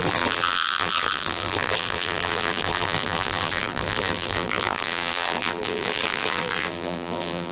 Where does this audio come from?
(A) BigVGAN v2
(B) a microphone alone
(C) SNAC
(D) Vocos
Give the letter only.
A